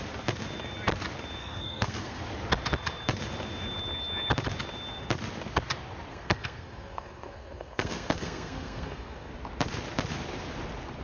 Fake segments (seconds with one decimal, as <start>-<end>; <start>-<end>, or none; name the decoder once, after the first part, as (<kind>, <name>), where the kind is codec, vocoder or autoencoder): 1.4-2.2 (codec, SNAC); 6.1-9.3